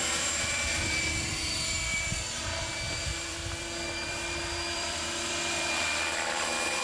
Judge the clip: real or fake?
fake